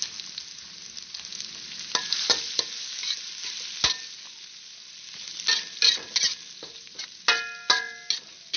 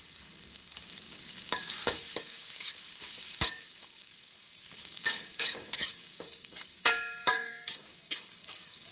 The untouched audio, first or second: first